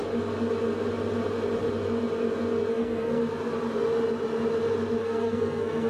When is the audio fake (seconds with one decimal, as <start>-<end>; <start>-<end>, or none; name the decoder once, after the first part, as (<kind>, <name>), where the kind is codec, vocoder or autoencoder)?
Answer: 2.7-3.2 (codec, SNAC); 5.0-5.9